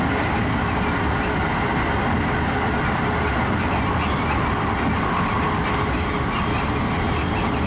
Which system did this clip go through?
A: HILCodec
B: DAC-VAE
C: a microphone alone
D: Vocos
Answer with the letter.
C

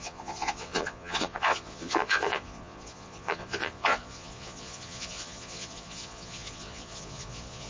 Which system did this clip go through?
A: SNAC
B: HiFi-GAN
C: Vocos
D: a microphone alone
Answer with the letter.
C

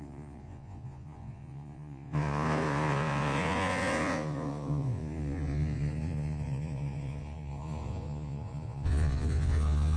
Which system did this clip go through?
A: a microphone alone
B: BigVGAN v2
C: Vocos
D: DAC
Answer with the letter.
C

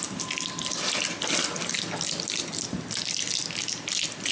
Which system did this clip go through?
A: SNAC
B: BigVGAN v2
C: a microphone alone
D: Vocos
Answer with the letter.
C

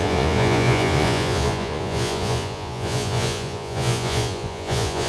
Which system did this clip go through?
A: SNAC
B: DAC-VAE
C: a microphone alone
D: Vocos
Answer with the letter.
D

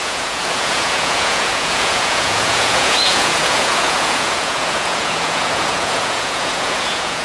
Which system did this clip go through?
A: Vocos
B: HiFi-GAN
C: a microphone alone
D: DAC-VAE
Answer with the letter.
A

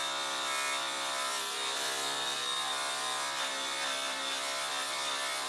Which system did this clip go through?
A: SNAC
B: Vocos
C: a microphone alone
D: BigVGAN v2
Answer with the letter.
C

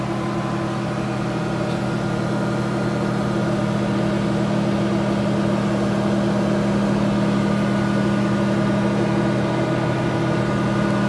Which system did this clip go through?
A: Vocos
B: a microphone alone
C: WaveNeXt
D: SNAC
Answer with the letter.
B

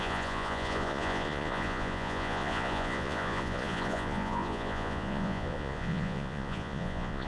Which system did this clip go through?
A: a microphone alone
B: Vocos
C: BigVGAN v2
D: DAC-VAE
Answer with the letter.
B